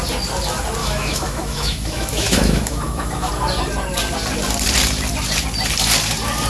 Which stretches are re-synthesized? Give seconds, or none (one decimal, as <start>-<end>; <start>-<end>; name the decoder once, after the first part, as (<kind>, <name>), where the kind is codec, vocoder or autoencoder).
0.8-3.3 (autoencoder, DAC-VAE)